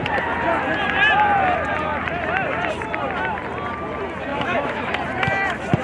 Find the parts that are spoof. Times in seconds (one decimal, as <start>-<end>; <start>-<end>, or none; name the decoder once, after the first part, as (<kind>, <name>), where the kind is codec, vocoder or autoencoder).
4.3-4.9 (autoencoder, DAC-VAE)